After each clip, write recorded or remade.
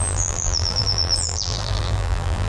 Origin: remade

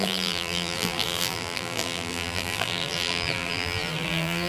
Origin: remade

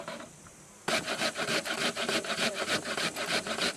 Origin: remade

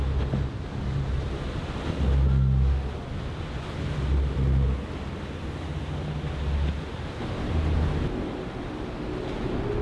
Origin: recorded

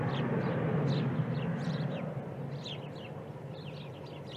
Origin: recorded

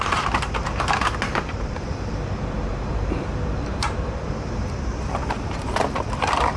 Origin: remade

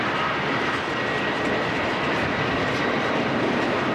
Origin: recorded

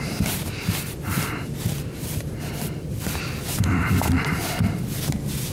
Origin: remade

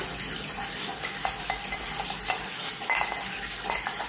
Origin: recorded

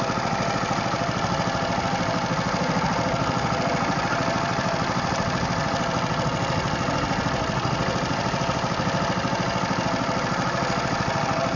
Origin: recorded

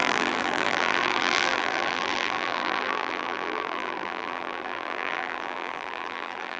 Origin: remade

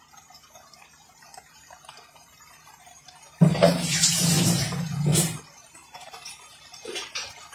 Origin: remade